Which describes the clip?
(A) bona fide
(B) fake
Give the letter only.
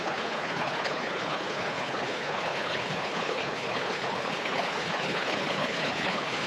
B